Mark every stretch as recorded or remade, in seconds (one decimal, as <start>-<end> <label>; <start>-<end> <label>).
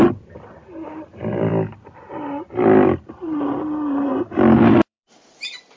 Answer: 0.0-1.5 remade; 1.5-3.1 recorded; 3.1-4.1 remade; 4.1-4.7 recorded; 4.7-5.8 remade